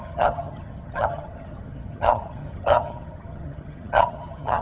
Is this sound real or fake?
fake